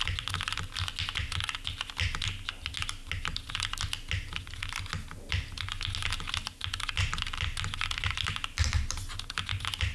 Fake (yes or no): no